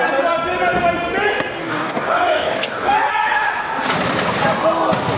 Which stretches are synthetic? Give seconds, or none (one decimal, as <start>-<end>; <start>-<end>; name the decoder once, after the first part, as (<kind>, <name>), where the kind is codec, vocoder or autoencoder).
1.6-3.1 (codec, DAC)